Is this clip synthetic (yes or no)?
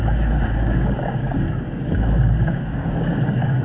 yes